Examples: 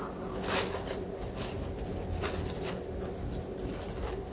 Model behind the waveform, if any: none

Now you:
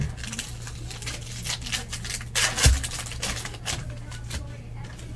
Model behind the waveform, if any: none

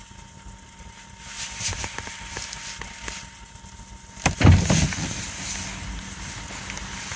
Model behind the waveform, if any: none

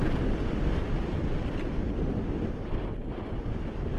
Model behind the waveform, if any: vocoder, BigVGAN v2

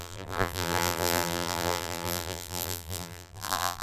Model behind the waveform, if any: vocoder, BigVGAN v2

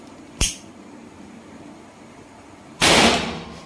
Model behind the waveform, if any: vocoder, BigVGAN v2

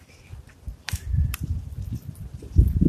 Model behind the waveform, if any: vocoder, BigVGAN v2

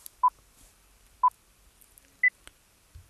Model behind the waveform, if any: none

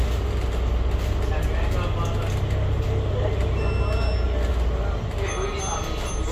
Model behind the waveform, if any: none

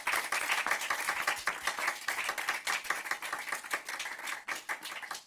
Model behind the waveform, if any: none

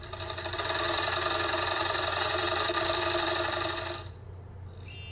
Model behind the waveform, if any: vocoder, BigVGAN v2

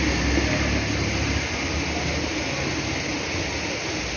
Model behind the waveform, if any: none